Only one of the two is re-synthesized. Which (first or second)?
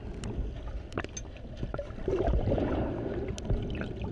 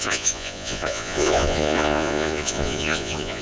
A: second